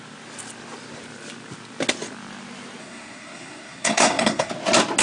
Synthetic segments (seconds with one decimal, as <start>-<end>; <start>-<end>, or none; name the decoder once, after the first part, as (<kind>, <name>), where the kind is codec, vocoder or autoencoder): 2.8-4.5 (codec, SNAC)